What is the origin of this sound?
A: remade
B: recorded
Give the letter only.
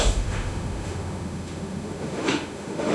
A